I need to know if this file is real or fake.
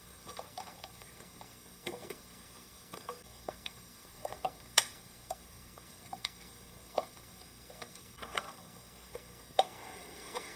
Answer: fake